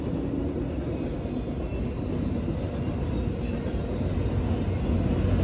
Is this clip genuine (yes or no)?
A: yes